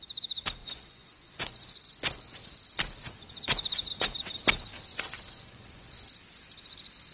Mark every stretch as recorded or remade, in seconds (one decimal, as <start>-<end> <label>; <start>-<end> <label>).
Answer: 0.0-0.6 recorded; 0.6-2.2 remade; 2.2-4.9 recorded; 4.9-6.1 remade; 6.1-7.1 recorded